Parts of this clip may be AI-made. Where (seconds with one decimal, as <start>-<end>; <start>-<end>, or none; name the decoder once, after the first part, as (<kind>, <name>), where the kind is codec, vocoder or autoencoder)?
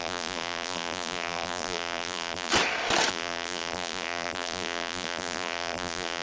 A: 0.0-2.5 (vocoder, BigVGAN v2); 3.1-6.2